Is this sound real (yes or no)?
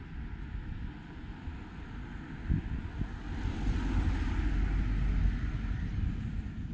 yes